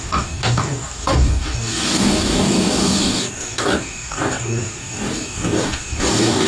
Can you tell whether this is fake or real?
fake